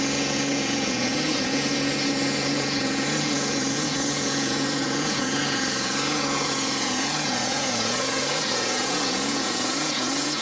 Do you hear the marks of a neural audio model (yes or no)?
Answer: yes